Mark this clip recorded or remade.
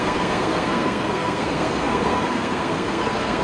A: remade